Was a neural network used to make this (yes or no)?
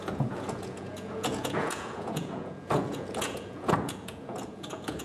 yes